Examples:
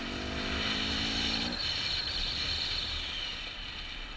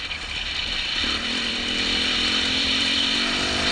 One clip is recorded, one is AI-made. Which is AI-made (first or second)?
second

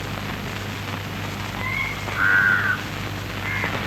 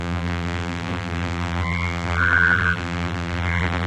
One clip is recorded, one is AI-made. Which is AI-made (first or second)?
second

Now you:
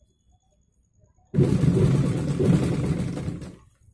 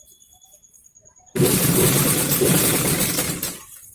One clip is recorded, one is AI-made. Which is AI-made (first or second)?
second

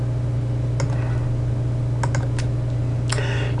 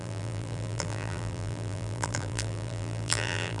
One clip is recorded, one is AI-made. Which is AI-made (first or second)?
second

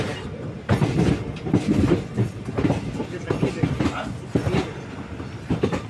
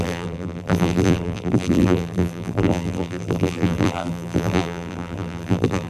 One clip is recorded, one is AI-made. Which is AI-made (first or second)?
second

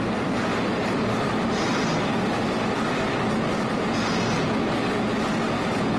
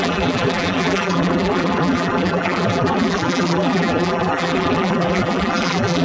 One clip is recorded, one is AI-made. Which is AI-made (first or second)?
second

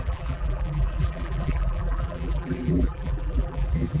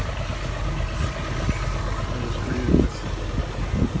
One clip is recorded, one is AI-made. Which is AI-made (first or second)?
first